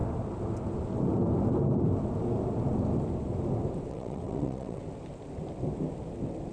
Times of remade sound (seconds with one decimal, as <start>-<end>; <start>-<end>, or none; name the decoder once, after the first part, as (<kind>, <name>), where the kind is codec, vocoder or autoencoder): 3.9-4.8 (vocoder, WaveNeXt)